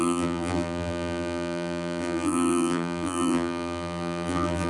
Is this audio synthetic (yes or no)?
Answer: yes